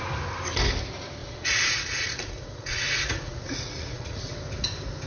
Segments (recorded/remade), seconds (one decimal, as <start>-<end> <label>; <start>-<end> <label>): 0.0-1.2 recorded; 1.2-4.3 remade; 4.3-5.1 recorded